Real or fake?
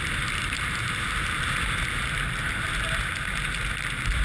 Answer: real